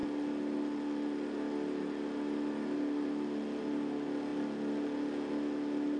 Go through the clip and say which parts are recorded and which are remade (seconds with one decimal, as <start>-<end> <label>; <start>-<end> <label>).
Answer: 0.0-6.0 recorded